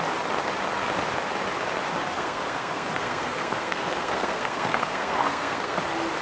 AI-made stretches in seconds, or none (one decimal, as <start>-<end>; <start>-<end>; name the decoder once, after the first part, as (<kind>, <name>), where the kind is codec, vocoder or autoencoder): 2.1-5.8 (codec, SNAC)